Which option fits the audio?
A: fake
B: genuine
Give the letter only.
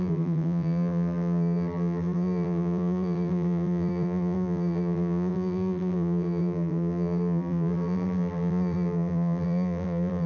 A